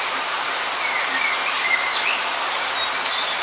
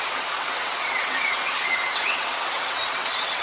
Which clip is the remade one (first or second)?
second